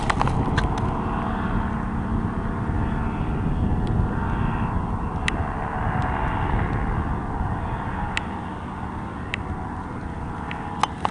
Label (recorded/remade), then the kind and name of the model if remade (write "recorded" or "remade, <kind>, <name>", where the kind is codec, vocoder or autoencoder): recorded